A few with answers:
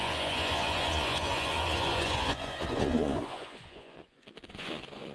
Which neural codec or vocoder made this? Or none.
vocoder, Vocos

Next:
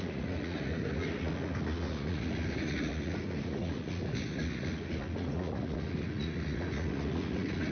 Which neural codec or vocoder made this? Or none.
vocoder, Vocos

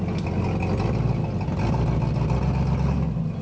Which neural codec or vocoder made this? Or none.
none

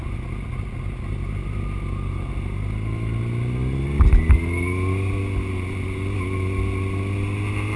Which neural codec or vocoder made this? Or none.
none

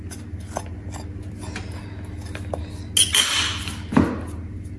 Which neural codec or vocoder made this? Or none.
none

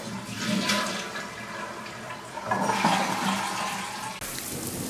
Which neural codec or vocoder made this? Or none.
none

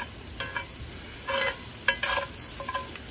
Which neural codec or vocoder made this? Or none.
none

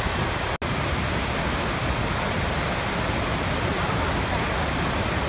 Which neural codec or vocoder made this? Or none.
none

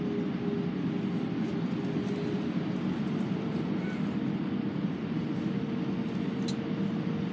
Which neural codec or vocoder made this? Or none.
none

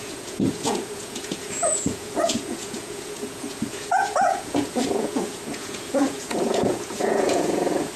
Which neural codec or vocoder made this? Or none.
vocoder, Vocos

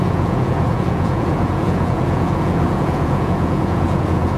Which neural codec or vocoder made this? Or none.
vocoder, Vocos